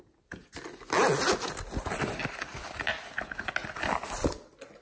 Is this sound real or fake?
real